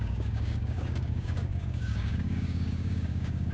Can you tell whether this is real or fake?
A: fake